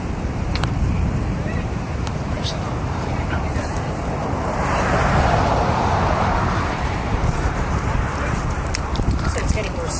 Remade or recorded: remade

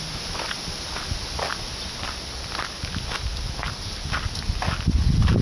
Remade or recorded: recorded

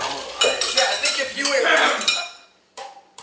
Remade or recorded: remade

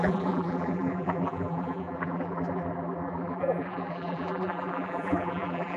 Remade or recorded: remade